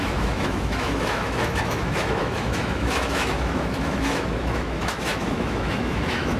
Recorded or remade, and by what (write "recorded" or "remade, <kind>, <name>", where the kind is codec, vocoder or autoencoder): remade, autoencoder, DAC-VAE